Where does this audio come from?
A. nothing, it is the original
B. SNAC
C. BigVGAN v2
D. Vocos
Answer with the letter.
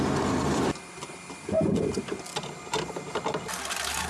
A